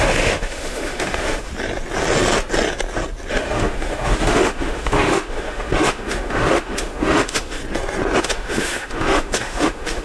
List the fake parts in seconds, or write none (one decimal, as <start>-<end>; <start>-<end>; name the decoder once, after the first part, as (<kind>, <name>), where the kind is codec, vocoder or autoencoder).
0.0-1.5 (autoencoder, DAC-VAE); 3.3-7.6; 8.2-10.0